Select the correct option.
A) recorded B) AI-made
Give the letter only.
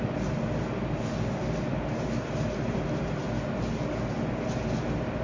A